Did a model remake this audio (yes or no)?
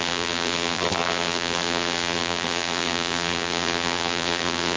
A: yes